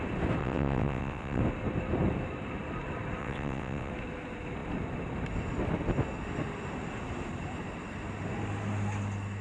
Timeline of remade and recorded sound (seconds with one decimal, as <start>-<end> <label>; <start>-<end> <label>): 0.0-0.4 recorded; 0.4-1.4 remade; 1.4-3.2 recorded; 3.2-3.9 remade; 3.9-9.4 recorded